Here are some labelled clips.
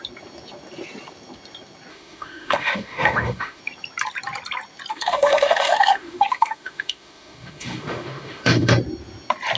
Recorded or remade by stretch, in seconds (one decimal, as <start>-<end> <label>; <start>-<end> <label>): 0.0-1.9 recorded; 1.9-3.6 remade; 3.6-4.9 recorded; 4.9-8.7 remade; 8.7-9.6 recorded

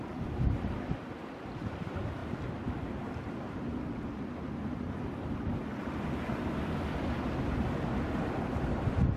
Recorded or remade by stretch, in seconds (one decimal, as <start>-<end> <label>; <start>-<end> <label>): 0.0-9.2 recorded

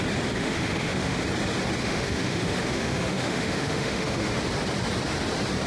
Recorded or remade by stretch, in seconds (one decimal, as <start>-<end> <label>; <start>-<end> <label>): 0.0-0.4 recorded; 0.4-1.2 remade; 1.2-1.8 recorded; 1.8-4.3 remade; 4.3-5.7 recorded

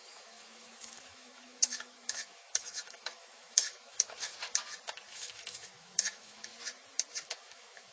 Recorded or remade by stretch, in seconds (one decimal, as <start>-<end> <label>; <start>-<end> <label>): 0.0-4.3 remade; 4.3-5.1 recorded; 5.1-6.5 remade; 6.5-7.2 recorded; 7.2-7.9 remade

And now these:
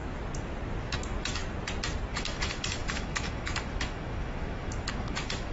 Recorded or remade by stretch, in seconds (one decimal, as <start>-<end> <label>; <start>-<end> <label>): 0.0-0.8 recorded; 0.8-1.4 remade; 1.4-2.1 recorded; 2.1-5.5 remade

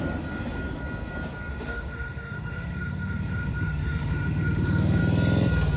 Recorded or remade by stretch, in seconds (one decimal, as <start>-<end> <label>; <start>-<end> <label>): 0.0-1.5 recorded; 1.5-5.0 remade; 5.0-5.8 recorded

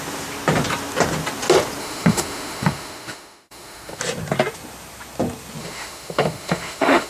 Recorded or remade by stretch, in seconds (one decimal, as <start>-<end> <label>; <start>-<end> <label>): 0.0-1.8 recorded; 1.8-4.0 remade; 4.0-5.6 recorded; 5.6-7.1 remade

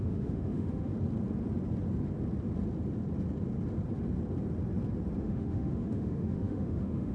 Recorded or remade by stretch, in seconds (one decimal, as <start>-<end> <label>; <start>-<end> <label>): 0.0-0.9 remade; 0.9-5.2 recorded; 5.2-7.1 remade